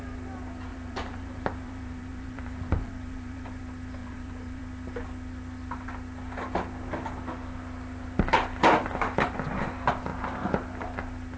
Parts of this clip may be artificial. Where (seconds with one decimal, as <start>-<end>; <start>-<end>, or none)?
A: 0.7-3.6; 4.0-4.6